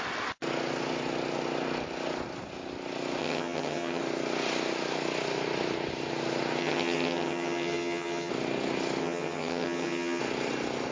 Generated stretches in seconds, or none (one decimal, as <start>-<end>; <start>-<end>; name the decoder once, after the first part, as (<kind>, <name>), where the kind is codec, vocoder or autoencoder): 3.2-4.0 (vocoder, HiFi-GAN); 6.6-8.3; 9.0-10.2